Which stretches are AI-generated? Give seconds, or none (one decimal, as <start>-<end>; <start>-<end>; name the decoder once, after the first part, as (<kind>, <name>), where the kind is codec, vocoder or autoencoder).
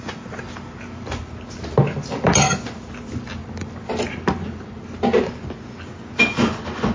none